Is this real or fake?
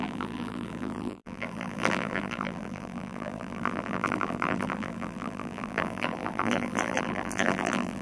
fake